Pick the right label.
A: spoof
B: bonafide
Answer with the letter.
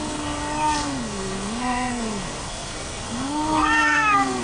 A